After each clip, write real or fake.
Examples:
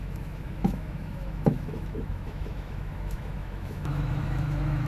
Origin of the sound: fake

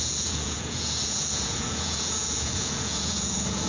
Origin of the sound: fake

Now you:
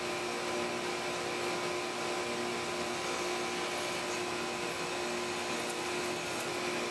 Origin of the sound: real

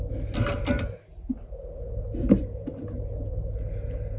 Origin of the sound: real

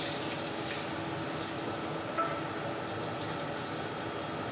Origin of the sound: real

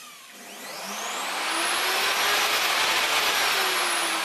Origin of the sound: real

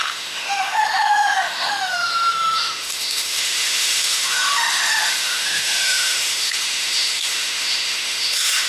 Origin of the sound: fake